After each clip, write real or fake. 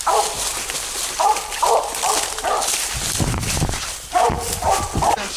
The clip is real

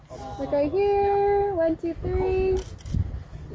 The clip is real